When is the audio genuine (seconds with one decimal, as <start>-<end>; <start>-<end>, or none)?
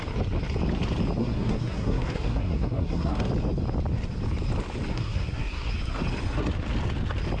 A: 0.0-1.2; 3.3-4.9; 5.7-7.4